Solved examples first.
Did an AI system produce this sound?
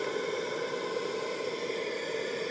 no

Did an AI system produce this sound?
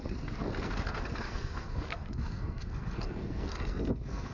yes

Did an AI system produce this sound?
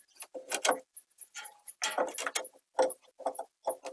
no